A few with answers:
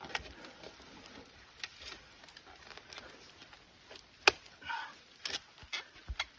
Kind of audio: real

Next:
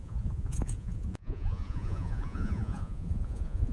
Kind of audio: fake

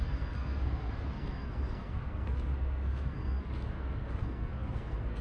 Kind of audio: fake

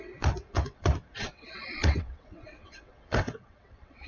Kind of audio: fake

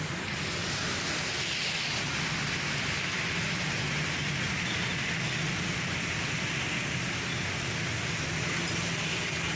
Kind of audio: real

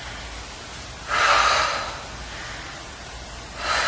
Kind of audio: real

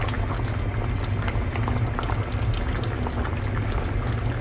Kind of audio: real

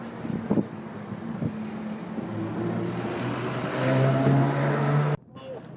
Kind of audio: real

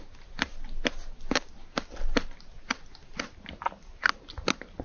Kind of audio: real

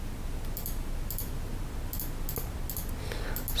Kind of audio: real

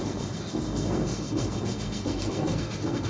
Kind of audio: fake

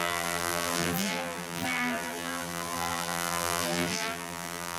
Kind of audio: fake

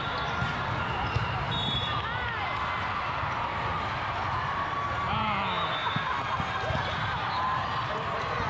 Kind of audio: real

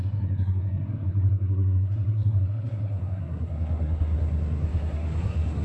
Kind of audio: fake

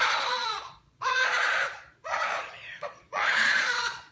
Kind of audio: fake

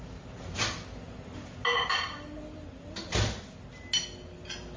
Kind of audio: real